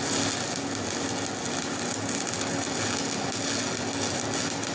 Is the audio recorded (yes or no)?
yes